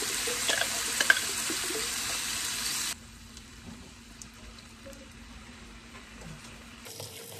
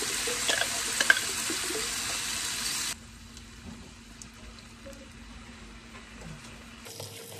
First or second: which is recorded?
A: second